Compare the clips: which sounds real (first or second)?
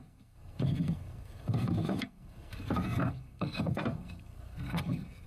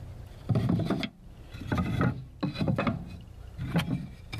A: second